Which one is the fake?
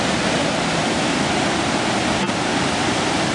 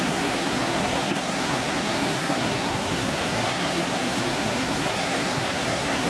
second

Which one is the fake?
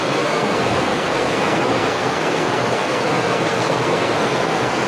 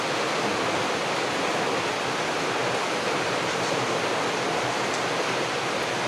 first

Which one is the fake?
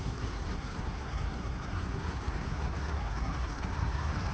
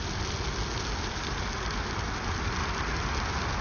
first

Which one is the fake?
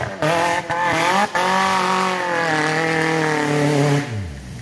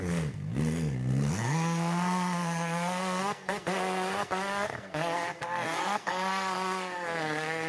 second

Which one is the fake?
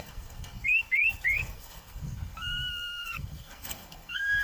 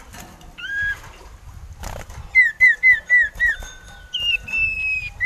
first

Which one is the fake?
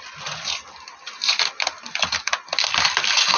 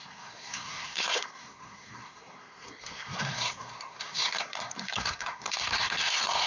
second